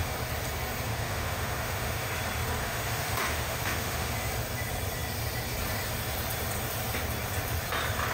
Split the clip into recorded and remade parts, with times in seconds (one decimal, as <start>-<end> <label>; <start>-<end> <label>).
0.0-0.9 recorded; 0.9-2.1 remade; 2.1-2.6 recorded; 2.6-4.1 remade; 4.1-8.1 recorded